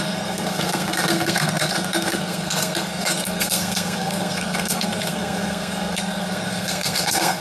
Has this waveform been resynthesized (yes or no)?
yes